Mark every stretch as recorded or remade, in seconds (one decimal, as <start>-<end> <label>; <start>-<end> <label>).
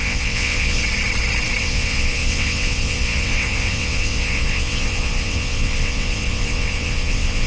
0.0-0.8 remade; 0.8-1.6 recorded; 1.6-7.5 remade